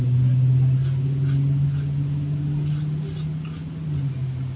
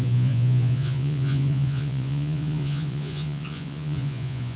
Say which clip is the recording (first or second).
first